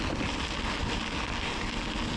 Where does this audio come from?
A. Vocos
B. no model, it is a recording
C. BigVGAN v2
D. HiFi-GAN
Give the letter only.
B